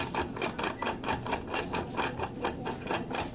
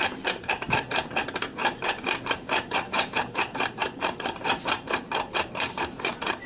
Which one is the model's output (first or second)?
second